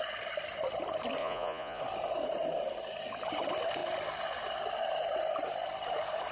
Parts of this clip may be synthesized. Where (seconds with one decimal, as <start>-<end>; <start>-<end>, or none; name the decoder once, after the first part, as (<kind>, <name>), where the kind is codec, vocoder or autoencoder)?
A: 1.2-1.8 (vocoder, Vocos)

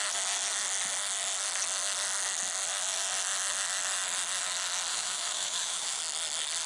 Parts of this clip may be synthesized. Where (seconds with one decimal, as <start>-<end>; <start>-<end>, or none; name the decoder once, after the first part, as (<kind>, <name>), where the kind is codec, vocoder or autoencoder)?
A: 4.9-6.0 (autoencoder, DAC-VAE)

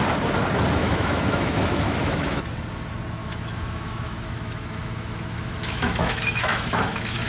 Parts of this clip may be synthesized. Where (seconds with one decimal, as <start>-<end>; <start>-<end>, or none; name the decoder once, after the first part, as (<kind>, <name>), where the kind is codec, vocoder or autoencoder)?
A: 0.8-2.4 (autoencoder, DAC-VAE); 3.2-7.3

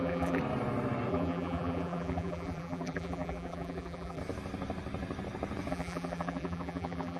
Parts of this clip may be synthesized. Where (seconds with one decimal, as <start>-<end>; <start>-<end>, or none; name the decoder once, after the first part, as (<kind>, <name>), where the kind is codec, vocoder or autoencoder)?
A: 0.0-0.4 (vocoder, BigVGAN v2); 1.1-4.2; 5.7-7.2

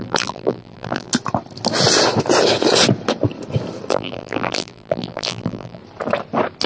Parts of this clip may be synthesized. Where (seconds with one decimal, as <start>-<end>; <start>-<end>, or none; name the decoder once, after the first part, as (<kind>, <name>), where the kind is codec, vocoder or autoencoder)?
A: 0.0-1.1 (vocoder, BigVGAN v2); 3.9-5.8

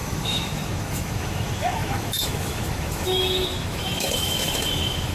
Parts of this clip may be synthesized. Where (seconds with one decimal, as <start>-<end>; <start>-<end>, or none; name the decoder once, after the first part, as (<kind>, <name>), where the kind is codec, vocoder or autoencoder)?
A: 0.0-5.1 (autoencoder, DAC-VAE)